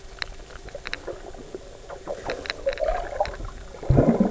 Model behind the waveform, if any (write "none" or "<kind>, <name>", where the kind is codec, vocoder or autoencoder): none